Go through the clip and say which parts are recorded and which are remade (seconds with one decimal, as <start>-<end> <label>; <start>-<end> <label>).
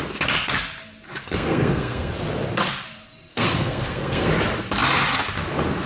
0.0-1.2 recorded; 1.2-2.1 remade; 2.1-3.3 recorded; 3.3-4.3 remade; 4.3-5.9 recorded